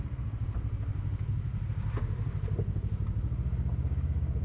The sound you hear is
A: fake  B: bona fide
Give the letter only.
B